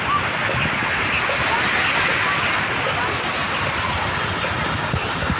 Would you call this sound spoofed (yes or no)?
no